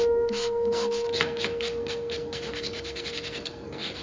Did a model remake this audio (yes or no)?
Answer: yes